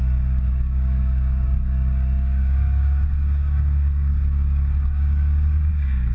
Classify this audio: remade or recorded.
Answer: remade